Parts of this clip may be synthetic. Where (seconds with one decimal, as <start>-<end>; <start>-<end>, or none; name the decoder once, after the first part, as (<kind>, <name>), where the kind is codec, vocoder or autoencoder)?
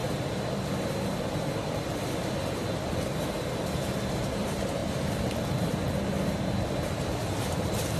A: 4.1-8.0 (vocoder, BigVGAN v2)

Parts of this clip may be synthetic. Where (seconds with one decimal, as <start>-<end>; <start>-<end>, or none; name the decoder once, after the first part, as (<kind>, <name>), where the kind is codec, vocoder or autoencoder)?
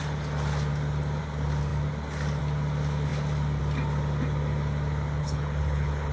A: 5.2-6.1 (codec, HILCodec)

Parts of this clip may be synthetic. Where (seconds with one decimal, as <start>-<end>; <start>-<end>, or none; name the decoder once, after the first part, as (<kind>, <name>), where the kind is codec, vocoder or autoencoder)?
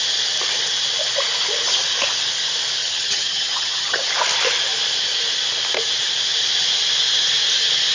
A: 2.8-4.1 (vocoder, HiFi-GAN)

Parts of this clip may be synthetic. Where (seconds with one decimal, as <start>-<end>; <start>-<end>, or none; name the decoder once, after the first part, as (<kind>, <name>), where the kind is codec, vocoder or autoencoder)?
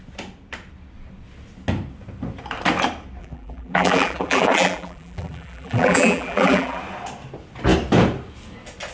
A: 3.2-6.8 (vocoder, BigVGAN v2)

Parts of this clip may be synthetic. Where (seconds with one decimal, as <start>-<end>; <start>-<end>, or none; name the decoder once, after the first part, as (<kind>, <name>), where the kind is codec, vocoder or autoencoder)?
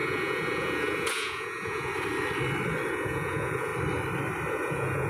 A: 0.0-1.9 (vocoder, Vocos); 2.9-3.7; 4.5-5.1